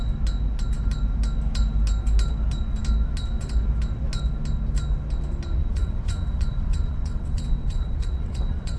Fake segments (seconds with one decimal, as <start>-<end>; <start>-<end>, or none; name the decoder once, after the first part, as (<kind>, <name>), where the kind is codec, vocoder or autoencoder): 5.6-8.8 (vocoder, WaveNeXt)